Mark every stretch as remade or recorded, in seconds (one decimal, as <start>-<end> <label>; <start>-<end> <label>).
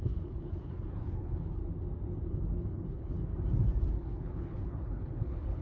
0.0-1.6 remade; 1.6-2.3 recorded; 2.3-3.3 remade; 3.3-3.9 recorded; 3.9-5.6 remade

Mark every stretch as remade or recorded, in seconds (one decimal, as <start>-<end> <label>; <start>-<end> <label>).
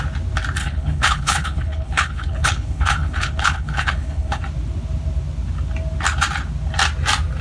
0.0-0.6 recorded; 0.6-4.4 remade; 4.4-7.4 recorded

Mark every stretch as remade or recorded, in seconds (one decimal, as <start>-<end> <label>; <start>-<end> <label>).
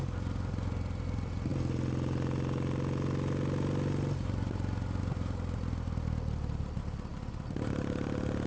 0.0-8.5 recorded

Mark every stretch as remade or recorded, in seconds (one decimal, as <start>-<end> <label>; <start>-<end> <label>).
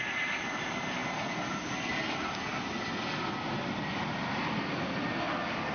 0.0-5.7 recorded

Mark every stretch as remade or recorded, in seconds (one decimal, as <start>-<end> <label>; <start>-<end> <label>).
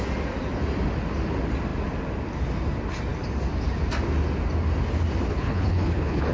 0.0-5.3 recorded; 5.3-6.3 remade